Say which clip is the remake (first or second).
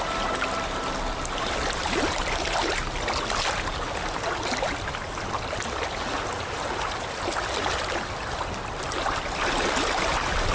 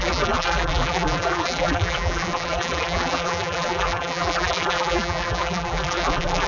second